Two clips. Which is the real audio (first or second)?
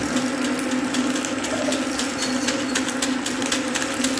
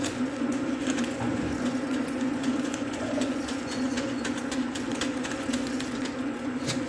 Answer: first